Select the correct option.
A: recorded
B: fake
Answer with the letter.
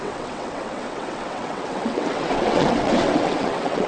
B